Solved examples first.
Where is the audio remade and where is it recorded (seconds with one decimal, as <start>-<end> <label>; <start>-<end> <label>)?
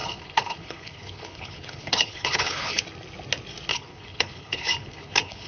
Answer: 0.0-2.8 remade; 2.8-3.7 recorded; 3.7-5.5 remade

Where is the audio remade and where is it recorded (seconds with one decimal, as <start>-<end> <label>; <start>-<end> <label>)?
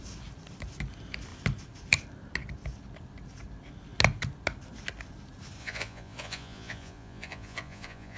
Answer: 0.0-5.6 recorded; 5.6-8.2 remade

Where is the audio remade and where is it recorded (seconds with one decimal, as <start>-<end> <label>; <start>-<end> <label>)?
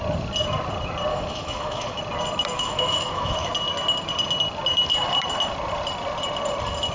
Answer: 0.0-1.1 recorded; 1.1-2.0 remade; 2.0-2.5 recorded; 2.5-3.5 remade; 3.5-6.9 recorded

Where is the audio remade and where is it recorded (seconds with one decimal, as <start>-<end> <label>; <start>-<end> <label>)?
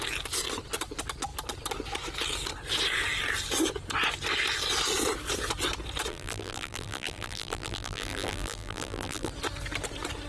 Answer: 0.0-6.1 recorded; 6.1-9.3 remade; 9.3-10.3 recorded